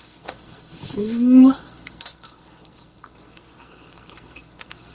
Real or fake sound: fake